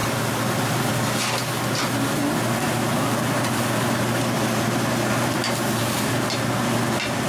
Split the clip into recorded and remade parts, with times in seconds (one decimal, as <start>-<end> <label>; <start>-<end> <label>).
0.0-0.8 remade; 0.8-7.3 recorded